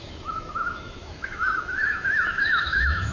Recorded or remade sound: remade